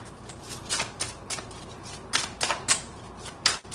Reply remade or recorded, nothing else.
recorded